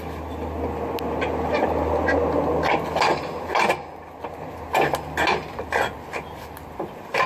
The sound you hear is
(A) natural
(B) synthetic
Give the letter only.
A